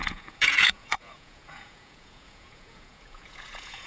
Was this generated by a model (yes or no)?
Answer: yes